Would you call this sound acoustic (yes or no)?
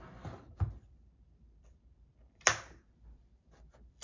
no